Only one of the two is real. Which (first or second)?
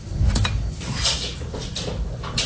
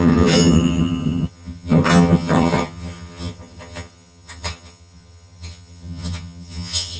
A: first